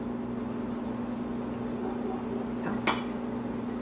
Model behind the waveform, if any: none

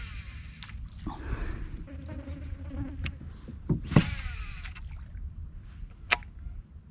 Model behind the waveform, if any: none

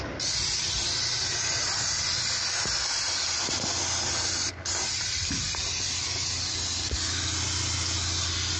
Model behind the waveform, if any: none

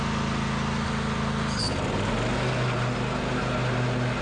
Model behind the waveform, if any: none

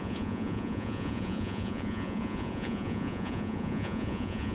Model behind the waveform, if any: vocoder, Vocos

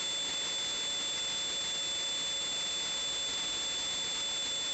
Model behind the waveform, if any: none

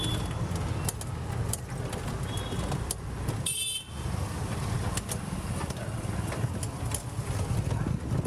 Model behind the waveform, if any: none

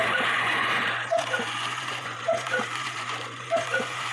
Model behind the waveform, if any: vocoder, Vocos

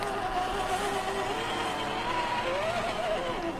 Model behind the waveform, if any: none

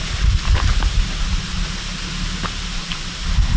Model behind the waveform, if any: none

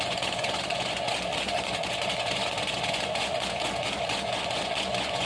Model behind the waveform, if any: vocoder, Vocos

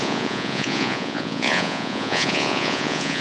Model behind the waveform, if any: vocoder, Vocos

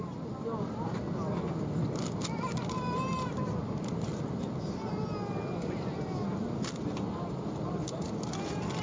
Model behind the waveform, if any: none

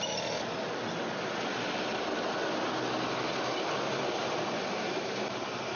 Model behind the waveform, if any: none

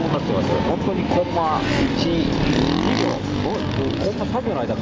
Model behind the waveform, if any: none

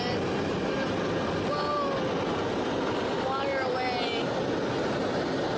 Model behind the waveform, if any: none